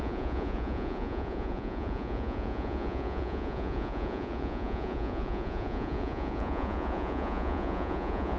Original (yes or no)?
no